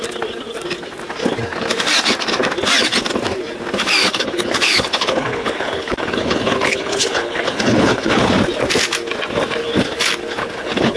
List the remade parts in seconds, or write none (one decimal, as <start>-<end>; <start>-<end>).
4.0-8.3; 10.4-11.0